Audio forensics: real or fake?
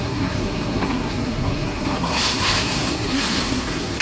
fake